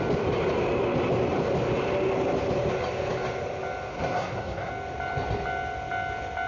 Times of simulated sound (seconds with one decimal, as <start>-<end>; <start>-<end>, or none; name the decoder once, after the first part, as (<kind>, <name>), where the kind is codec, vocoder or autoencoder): 3.9-4.7 (codec, SNAC)